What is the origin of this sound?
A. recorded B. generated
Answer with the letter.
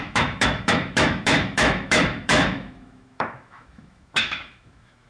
B